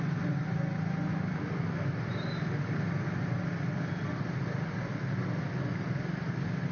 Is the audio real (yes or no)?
yes